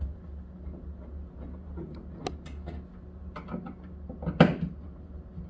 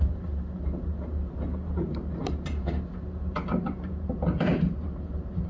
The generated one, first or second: second